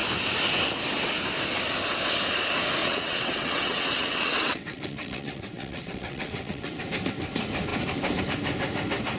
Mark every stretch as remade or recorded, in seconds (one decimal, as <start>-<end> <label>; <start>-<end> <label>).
0.0-2.8 recorded; 2.8-6.8 remade; 6.8-9.2 recorded